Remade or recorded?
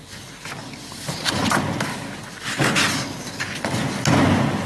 recorded